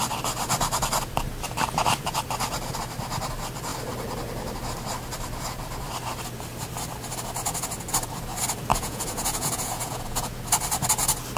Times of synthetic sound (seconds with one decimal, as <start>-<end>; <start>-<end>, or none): 8.7-10.4

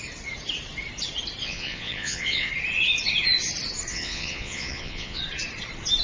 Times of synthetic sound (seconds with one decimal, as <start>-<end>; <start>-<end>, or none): 1.4-2.5; 3.9-5.2

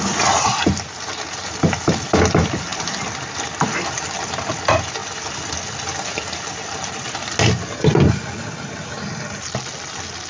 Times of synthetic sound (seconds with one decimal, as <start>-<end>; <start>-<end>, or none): none

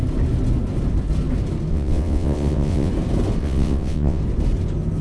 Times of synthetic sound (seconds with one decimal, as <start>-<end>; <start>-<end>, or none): 1.7-2.9; 3.4-4.2

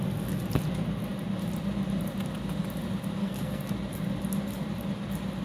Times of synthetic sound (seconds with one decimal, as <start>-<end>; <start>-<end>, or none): 3.2-3.7